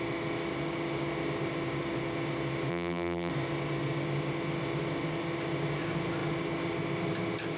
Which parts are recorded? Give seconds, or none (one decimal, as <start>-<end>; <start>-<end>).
0.0-2.7; 3.3-7.6